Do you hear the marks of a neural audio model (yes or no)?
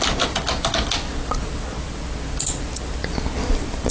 no